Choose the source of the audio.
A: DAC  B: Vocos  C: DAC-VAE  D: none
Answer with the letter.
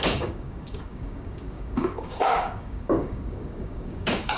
A